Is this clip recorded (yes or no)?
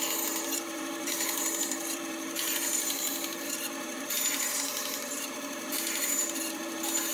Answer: no